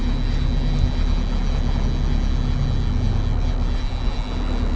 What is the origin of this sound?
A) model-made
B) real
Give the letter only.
B